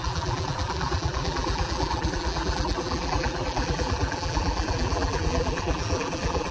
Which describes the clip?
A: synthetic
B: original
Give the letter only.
A